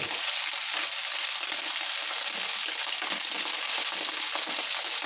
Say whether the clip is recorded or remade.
recorded